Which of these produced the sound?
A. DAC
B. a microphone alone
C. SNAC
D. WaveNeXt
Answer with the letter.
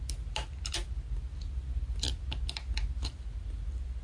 B